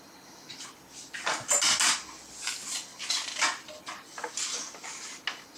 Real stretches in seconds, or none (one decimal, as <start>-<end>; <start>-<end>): 0.0-5.6